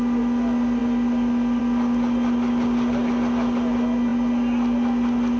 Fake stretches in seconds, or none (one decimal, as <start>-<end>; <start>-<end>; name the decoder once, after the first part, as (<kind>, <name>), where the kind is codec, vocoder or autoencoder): none